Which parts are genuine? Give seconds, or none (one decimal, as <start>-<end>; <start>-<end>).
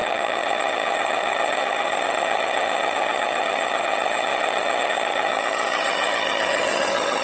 none